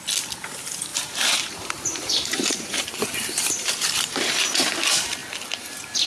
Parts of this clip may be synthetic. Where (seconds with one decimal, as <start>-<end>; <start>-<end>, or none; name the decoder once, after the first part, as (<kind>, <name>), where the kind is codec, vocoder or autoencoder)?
0.9-4.6 (vocoder, BigVGAN v2)